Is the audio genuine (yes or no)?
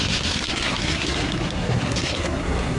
no